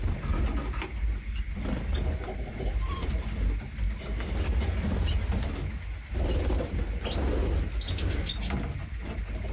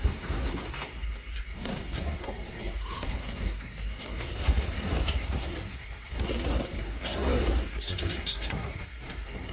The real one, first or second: first